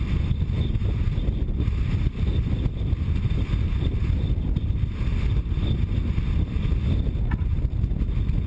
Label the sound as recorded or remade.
recorded